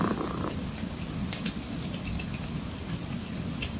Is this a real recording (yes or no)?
yes